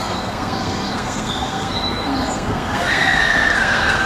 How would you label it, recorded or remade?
remade